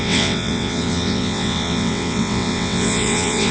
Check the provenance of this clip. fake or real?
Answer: fake